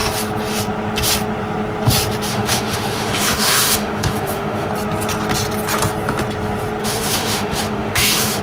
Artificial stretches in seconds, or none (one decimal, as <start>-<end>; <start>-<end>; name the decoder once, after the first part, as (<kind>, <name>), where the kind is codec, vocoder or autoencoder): 2.3-4.7 (autoencoder, DAC-VAE); 6.8-8.4